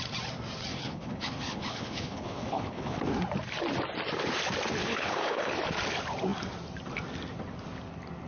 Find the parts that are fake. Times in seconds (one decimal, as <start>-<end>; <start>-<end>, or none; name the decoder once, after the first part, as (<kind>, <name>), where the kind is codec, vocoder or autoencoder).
0.7-3.0 (codec, HILCodec); 4.8-5.5